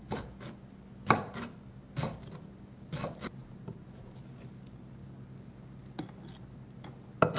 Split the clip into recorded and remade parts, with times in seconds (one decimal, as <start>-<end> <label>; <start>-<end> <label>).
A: 0.0-7.4 recorded